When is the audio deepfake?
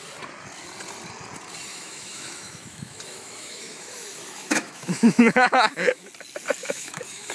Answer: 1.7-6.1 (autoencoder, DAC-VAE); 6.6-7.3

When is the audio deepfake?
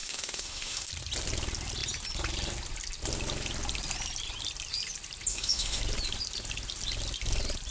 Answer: 0.0-0.9 (autoencoder, DAC-VAE); 5.3-5.8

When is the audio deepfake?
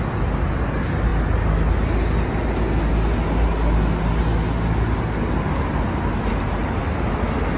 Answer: none